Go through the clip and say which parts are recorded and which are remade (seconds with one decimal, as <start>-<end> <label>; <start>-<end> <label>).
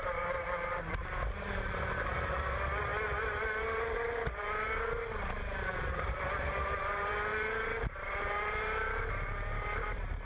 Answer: 0.0-10.3 remade